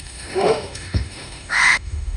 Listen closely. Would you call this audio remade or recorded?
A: remade